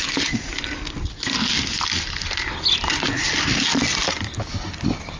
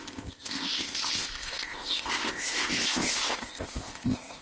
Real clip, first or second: first